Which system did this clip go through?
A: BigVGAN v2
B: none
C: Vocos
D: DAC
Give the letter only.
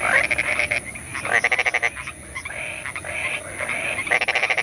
B